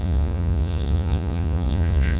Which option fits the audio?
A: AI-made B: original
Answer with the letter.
A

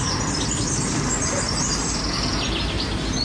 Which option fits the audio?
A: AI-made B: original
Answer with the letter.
B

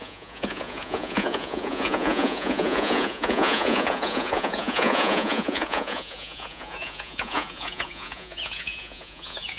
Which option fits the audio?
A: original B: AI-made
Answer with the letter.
B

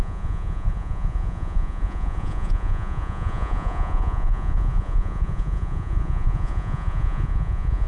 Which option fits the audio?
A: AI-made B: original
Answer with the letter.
A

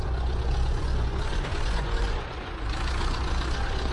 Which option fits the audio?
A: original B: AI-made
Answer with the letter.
B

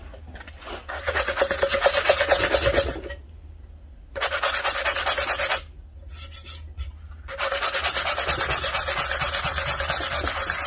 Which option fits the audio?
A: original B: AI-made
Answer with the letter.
A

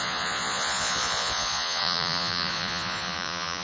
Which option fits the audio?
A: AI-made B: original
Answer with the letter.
A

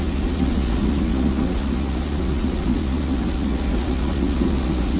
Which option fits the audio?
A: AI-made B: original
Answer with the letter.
A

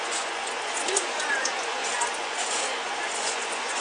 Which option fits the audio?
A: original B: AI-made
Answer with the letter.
B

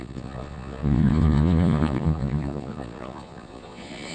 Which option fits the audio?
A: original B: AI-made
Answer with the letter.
B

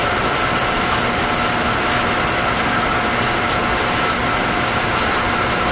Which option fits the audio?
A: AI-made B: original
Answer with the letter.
B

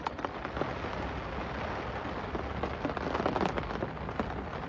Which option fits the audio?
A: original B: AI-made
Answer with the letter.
A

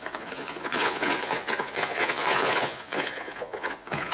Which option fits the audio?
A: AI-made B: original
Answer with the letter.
A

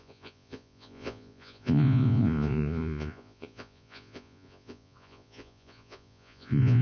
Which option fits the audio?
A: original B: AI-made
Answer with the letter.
B